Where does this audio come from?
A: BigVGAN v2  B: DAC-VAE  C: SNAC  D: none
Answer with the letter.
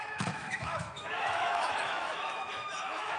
B